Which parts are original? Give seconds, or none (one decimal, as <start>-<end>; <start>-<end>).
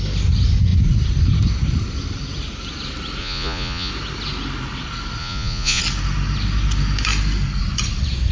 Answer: 0.0-3.2; 3.9-5.2; 5.8-8.3